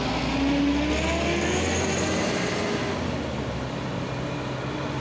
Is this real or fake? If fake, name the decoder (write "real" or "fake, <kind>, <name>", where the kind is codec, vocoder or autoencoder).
real